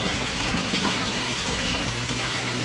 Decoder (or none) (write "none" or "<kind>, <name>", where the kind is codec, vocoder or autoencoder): codec, SNAC